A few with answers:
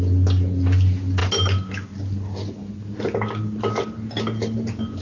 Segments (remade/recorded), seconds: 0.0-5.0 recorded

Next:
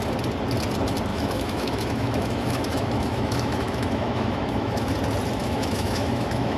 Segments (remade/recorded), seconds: 0.0-1.1 recorded; 1.1-4.9 remade; 4.9-5.4 recorded; 5.4-6.6 remade

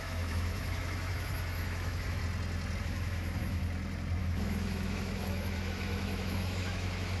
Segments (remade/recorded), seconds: 0.0-2.2 remade; 2.2-2.8 recorded; 2.8-3.6 remade; 3.6-4.2 recorded; 4.2-7.2 remade